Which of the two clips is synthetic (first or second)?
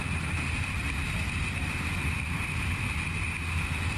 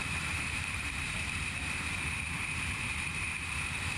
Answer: second